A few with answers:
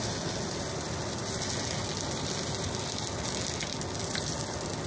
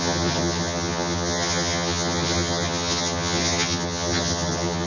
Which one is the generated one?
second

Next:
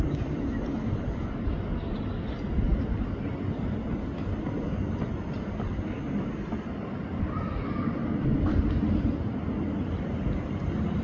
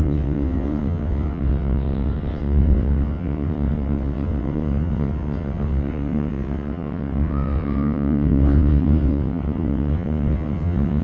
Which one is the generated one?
second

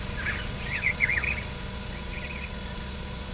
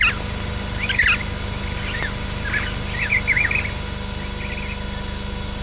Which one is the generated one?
first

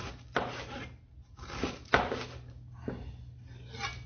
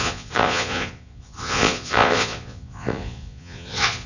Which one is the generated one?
second